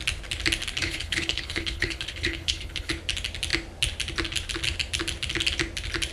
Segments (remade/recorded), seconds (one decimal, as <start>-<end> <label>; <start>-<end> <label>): 0.0-0.8 recorded; 0.8-2.9 remade; 2.9-6.1 recorded